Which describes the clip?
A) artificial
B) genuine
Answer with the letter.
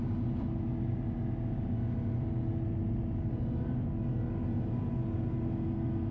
B